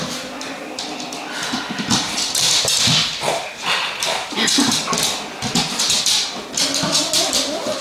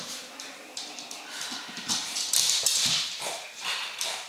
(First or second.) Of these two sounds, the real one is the first